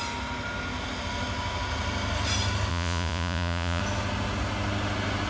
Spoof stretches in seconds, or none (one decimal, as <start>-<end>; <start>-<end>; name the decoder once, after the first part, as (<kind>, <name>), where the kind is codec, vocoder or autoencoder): 2.7-3.8 (vocoder, Vocos)